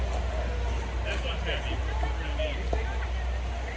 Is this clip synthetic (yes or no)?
no